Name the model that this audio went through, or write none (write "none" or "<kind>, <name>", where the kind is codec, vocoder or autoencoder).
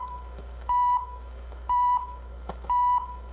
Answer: autoencoder, DAC-VAE